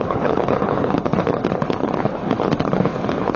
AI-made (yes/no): yes